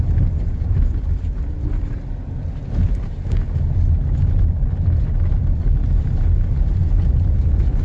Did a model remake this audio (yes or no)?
no